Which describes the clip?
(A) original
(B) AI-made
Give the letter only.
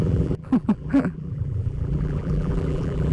B